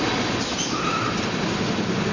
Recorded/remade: recorded